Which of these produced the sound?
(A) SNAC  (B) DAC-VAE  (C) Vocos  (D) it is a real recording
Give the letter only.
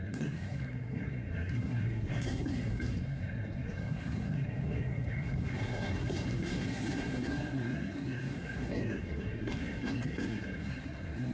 A